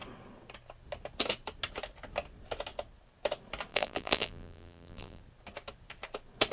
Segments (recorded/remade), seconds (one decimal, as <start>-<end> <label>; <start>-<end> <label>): 0.0-3.7 recorded; 3.7-5.2 remade; 5.2-6.5 recorded